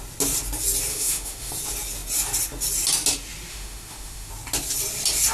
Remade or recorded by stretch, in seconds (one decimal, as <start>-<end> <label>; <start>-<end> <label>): 0.0-0.9 recorded; 0.9-1.5 remade; 1.5-3.5 recorded; 3.5-4.3 remade; 4.3-5.3 recorded

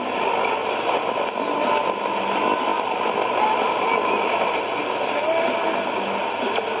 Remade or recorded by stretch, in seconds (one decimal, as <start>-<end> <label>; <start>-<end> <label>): 0.0-6.8 recorded

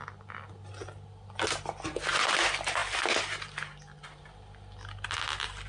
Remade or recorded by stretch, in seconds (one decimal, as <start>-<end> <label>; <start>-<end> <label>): 0.0-5.7 recorded

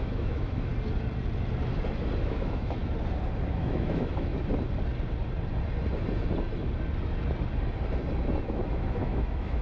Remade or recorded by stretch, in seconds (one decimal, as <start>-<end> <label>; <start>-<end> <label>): 0.0-0.7 remade; 0.7-2.2 recorded; 2.2-2.8 remade; 2.8-3.5 recorded; 3.5-4.3 remade; 4.3-8.5 recorded; 8.5-9.6 remade

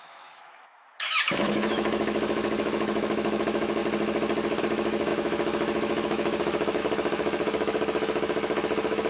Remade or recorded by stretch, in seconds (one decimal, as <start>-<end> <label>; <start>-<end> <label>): 0.0-3.8 remade; 3.8-4.6 recorded; 4.6-9.1 remade

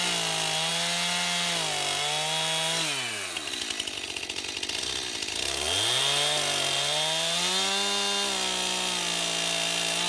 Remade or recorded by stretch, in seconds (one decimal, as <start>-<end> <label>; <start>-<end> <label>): 0.0-10.1 recorded

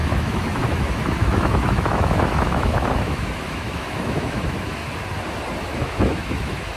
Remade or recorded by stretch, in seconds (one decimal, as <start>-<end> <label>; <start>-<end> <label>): 0.0-4.8 remade; 4.8-5.6 recorded; 5.6-6.8 remade

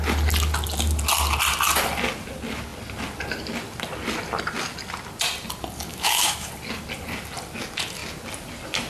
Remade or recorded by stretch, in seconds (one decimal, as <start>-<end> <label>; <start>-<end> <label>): 0.0-5.9 recorded; 5.9-6.5 remade; 6.5-8.9 recorded